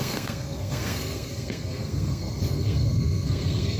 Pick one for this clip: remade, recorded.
remade